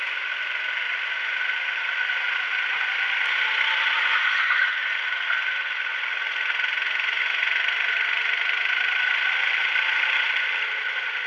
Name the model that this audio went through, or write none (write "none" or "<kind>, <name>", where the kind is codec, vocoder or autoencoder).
none